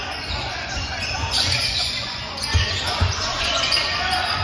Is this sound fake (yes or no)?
yes